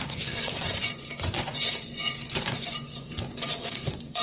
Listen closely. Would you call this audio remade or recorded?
remade